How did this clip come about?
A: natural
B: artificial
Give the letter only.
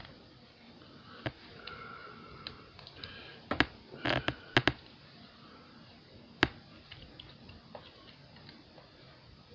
A